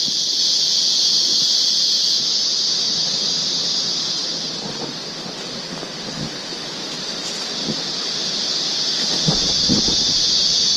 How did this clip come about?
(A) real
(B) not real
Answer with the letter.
A